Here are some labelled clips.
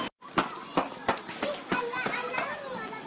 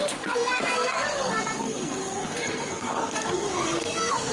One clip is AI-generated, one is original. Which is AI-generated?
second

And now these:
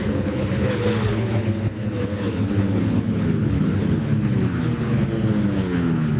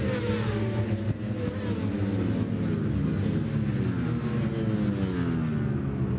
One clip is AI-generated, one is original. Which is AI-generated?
first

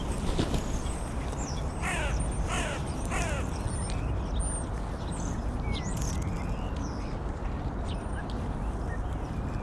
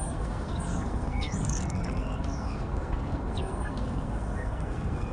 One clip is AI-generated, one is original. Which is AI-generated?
second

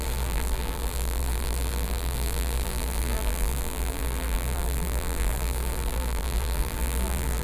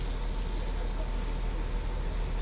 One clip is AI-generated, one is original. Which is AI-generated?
first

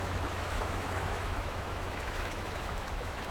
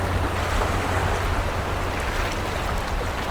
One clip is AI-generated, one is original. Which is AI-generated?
first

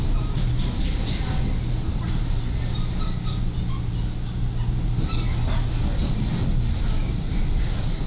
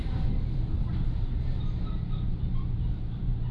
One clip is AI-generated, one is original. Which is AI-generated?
second